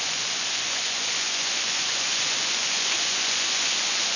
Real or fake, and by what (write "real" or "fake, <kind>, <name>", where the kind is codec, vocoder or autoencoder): fake, vocoder, Vocos